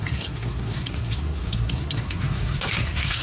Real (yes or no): no